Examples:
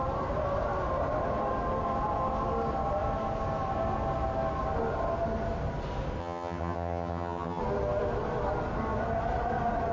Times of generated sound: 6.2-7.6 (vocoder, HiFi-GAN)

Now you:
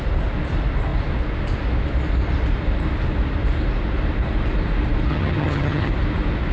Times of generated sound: 5.1-5.9 (vocoder, HiFi-GAN)

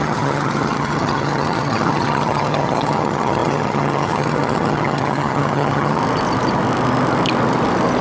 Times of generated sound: 0.0-6.0 (vocoder, HiFi-GAN)

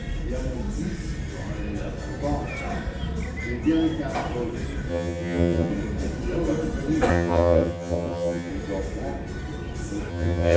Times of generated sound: 4.9-5.7 (vocoder, HiFi-GAN); 7.1-8.5; 10.1-10.6

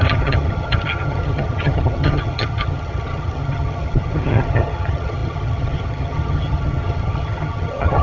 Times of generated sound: 0.0-8.0 (vocoder, HiFi-GAN)

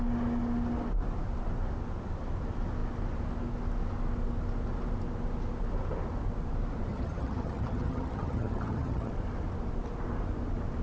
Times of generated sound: 6.9-9.1 (vocoder, HiFi-GAN)